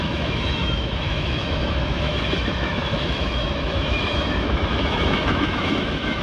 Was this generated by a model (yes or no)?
yes